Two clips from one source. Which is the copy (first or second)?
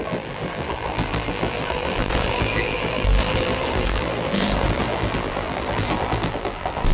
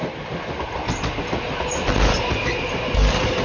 first